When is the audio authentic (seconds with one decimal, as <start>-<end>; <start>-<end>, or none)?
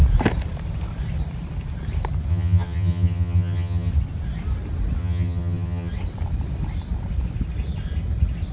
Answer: 0.0-2.3; 3.9-5.0; 5.9-8.5